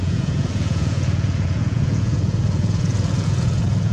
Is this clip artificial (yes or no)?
yes